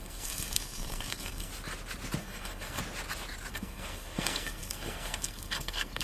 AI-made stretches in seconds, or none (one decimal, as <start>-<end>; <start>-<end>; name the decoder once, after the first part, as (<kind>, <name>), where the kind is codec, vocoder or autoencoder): 0.0-1.5 (codec, SNAC); 2.2-2.8; 3.5-6.0